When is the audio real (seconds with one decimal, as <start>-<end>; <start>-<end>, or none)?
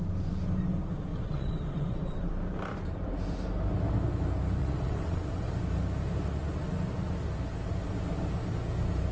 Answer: 0.0-1.1; 2.3-4.6; 5.5-9.1